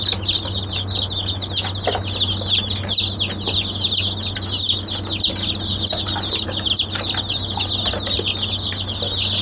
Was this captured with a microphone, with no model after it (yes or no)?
yes